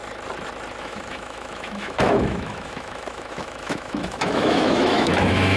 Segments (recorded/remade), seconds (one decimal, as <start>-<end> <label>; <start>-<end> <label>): 0.0-0.8 recorded; 0.8-5.6 remade